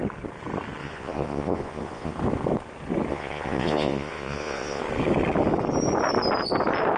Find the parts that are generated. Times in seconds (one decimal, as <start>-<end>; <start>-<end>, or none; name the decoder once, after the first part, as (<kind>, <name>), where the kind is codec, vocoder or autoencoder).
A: 0.8-2.1 (vocoder, Vocos); 3.1-4.8